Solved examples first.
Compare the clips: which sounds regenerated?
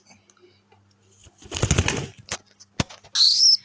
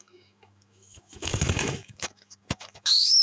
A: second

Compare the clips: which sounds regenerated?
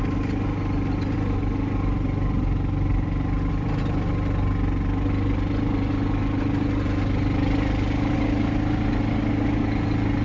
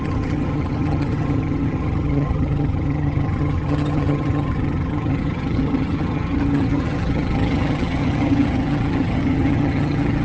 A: second